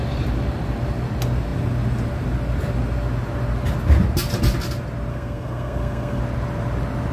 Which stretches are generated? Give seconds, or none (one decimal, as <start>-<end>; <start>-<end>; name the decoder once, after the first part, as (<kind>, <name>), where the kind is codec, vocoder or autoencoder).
5.1-6.2 (codec, SNAC)